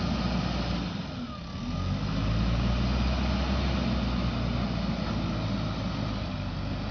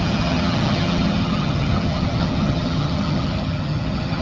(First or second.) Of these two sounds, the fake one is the second